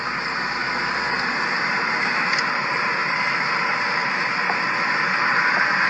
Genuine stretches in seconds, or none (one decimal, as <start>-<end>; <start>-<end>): 0.0-5.9